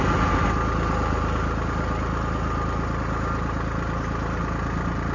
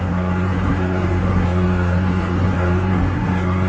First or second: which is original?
first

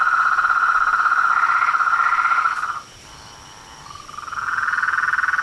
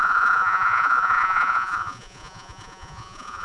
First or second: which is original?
first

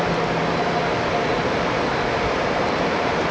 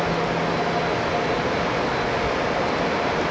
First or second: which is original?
second